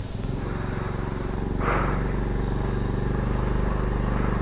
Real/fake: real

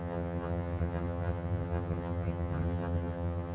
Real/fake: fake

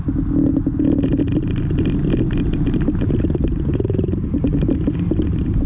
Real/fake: real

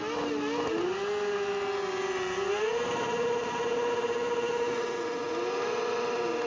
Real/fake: real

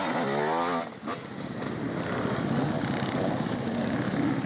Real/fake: real